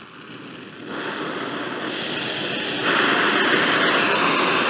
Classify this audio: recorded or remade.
recorded